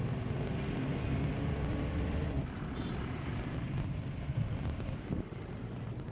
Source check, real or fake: real